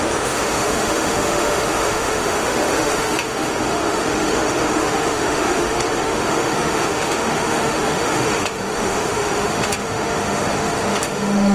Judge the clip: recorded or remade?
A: remade